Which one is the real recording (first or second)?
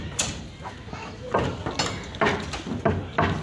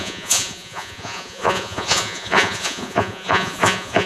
first